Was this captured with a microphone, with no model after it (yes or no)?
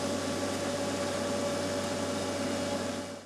yes